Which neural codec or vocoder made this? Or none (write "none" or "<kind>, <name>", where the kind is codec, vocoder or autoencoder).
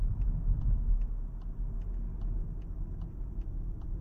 none